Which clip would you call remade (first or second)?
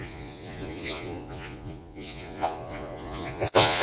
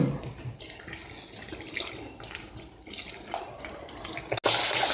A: first